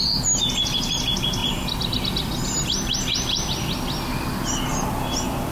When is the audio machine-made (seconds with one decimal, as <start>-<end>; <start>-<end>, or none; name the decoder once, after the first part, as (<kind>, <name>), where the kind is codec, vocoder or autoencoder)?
none